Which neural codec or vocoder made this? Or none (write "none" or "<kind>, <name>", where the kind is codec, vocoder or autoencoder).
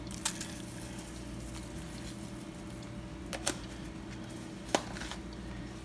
none